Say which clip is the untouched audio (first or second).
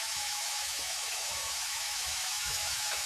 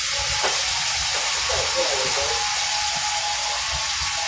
second